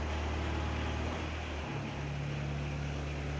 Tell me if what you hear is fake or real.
real